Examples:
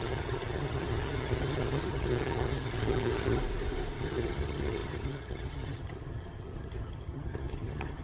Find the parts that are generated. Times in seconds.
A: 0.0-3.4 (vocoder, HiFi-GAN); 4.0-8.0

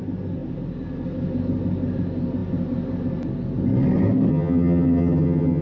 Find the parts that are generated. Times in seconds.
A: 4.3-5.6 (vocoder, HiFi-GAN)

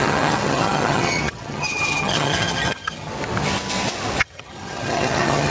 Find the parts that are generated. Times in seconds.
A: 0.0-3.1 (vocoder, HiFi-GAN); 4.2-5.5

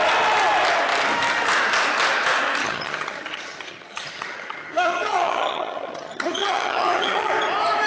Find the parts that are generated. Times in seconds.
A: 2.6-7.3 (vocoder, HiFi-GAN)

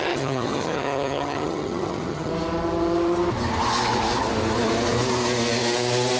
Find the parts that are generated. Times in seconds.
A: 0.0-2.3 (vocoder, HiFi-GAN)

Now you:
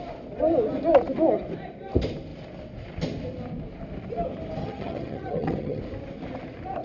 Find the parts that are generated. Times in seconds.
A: 4.6-5.8 (vocoder, HiFi-GAN)